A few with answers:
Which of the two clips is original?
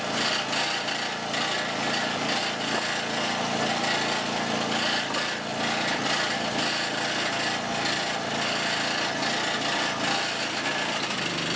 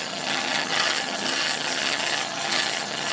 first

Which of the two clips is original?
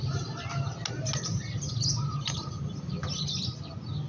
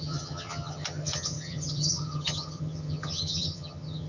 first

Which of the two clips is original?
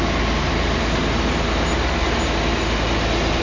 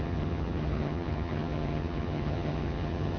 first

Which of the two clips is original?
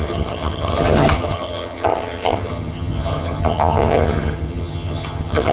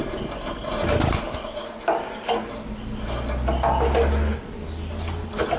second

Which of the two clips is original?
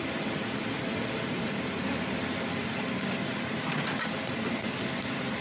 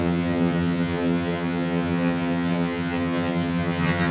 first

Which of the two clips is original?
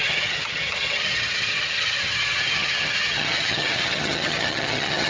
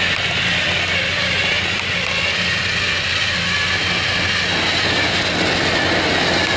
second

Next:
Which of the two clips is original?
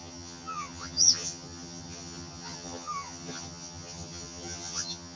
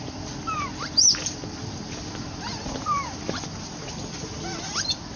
second